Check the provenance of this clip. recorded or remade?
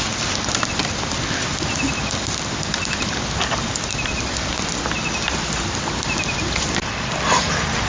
remade